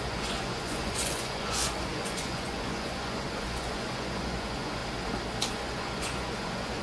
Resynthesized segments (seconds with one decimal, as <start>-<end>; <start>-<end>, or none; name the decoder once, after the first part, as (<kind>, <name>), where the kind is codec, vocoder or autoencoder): 0.0-4.8 (vocoder, Vocos); 5.5-6.8